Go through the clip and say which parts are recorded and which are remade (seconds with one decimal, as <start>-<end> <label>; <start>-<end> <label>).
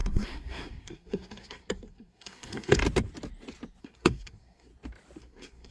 0.0-2.8 remade; 2.8-3.8 recorded; 3.8-4.7 remade; 4.7-5.2 recorded; 5.2-5.7 remade